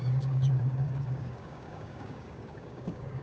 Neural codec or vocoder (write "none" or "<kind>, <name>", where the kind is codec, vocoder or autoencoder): codec, DAC